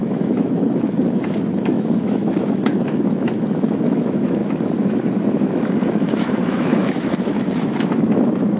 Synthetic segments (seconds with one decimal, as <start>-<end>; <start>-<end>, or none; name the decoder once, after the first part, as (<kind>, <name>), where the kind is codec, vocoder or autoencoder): 0.0-8.6 (autoencoder, DAC-VAE)